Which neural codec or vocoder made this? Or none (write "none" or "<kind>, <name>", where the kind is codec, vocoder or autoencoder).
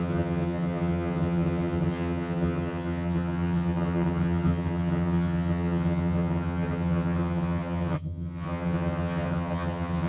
vocoder, HiFi-GAN